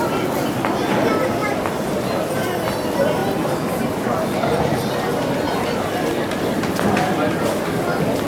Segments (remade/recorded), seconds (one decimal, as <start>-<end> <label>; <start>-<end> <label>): 0.0-8.3 recorded